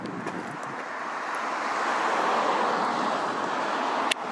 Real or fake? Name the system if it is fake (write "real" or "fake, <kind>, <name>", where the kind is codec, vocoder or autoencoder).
real